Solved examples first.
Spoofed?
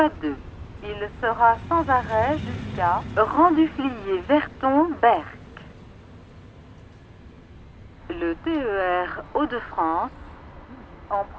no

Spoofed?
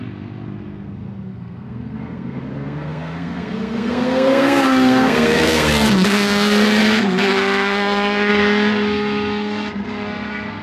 yes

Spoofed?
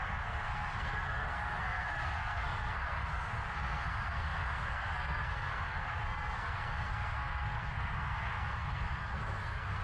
yes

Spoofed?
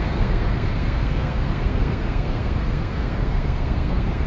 yes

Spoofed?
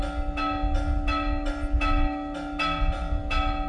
no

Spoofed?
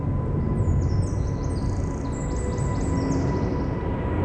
no